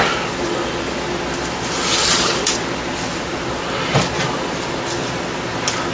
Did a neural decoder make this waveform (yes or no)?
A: no